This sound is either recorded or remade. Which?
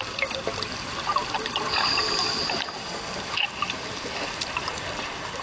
recorded